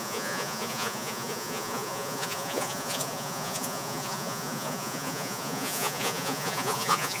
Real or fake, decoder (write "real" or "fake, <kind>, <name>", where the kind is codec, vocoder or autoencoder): fake, vocoder, Vocos